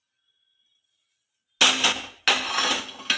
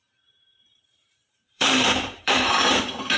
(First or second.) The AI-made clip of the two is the second